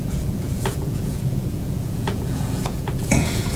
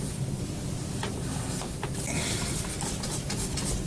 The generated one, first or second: first